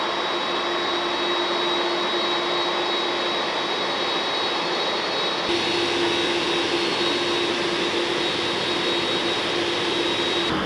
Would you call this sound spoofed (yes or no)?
no